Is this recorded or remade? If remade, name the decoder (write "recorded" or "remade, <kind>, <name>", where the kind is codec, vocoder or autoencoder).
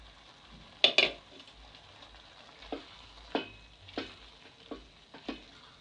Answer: recorded